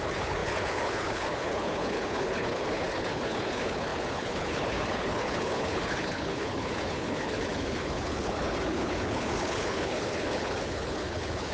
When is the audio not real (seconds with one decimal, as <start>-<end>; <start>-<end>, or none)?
0.0-11.5